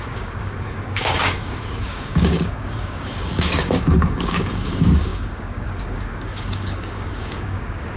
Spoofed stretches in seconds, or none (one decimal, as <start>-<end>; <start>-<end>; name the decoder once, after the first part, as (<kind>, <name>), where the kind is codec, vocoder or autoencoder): 0.0-8.0 (codec, DAC)